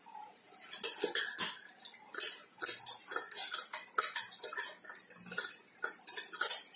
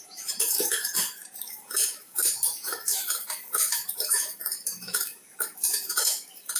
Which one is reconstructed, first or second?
second